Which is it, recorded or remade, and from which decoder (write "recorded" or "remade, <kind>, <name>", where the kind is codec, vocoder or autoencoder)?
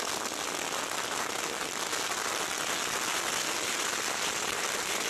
recorded